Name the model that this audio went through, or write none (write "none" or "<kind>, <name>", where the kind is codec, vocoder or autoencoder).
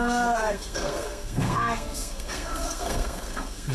codec, SNAC